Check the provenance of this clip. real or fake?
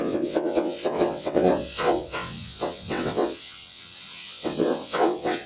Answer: fake